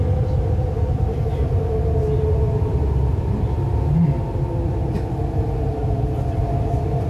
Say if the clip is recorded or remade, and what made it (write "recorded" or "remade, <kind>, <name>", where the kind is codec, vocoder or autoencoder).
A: recorded